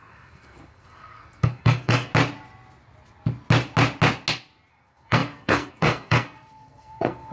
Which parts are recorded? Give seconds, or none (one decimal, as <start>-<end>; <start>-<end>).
2.1-4.7